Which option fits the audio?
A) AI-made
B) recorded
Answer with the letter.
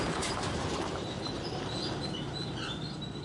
A